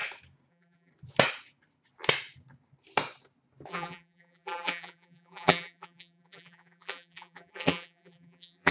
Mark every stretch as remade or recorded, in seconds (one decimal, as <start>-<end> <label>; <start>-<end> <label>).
0.0-0.5 recorded; 0.5-0.9 remade; 0.9-3.7 recorded; 3.7-8.7 remade

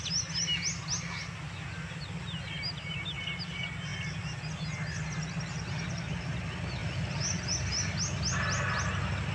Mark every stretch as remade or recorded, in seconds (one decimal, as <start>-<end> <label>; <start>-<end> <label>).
0.0-6.8 recorded; 6.8-7.5 remade; 7.5-9.3 recorded

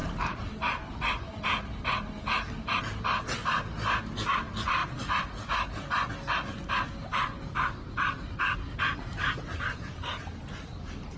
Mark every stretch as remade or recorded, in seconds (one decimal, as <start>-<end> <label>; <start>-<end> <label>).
0.0-7.1 recorded; 7.1-9.3 remade; 9.3-11.2 recorded